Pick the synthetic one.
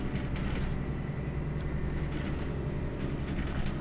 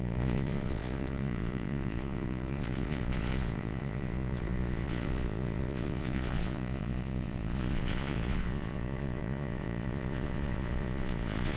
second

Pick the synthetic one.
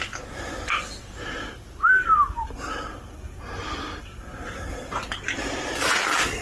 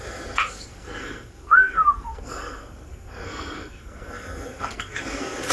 second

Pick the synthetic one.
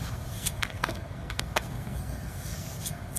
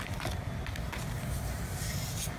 first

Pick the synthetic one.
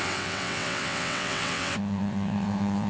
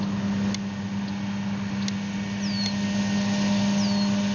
first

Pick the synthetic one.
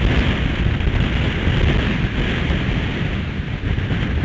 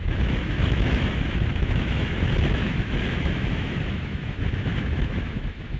second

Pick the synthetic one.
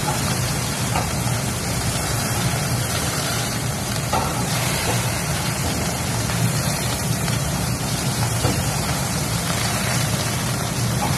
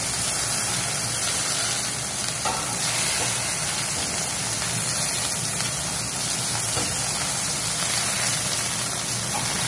first